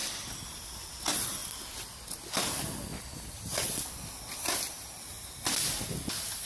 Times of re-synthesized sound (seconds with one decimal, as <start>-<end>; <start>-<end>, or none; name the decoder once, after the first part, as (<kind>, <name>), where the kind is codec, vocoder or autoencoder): none